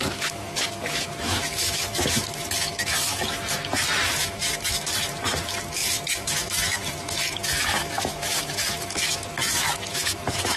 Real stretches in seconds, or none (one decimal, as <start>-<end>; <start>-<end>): none